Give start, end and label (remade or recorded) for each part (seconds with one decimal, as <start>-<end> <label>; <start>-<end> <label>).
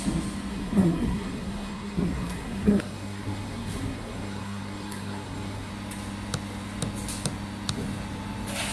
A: 0.0-0.5 recorded; 0.5-5.7 remade; 5.7-8.7 recorded